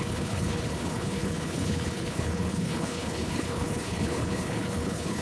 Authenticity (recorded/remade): remade